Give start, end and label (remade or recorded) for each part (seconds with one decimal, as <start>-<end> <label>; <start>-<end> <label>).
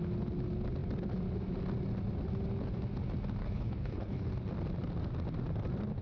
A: 0.0-3.4 recorded; 3.4-4.3 remade; 4.3-6.0 recorded